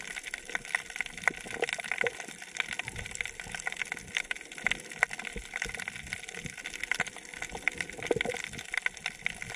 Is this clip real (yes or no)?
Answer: yes